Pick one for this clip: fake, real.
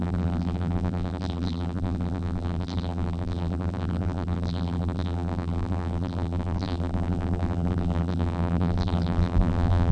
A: fake